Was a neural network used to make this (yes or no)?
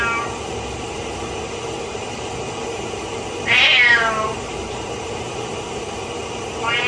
no